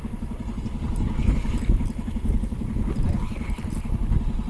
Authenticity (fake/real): real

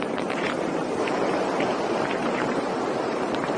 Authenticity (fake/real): fake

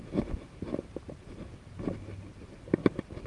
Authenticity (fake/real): fake